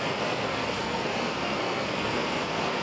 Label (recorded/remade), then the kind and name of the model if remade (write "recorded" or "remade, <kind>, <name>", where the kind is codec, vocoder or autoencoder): remade, codec, SNAC